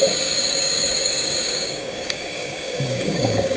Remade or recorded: remade